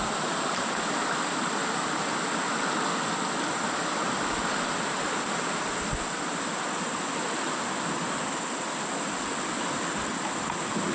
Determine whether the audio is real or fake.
real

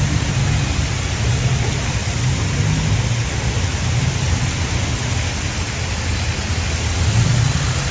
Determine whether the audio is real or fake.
real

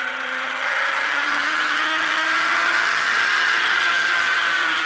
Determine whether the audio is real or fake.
fake